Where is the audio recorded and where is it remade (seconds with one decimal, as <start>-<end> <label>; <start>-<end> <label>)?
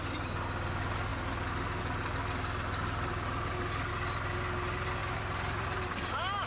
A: 0.0-5.0 recorded; 5.0-6.0 remade; 6.0-6.5 recorded